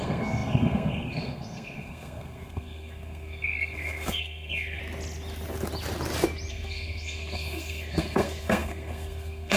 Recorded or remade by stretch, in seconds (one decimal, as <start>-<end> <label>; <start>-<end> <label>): 0.0-4.8 remade; 4.8-6.5 recorded; 6.5-9.6 remade